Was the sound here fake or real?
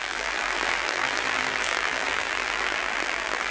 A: fake